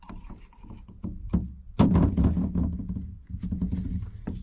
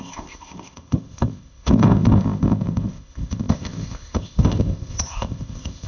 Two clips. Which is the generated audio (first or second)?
second